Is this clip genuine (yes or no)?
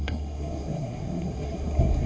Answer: no